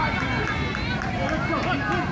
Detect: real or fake real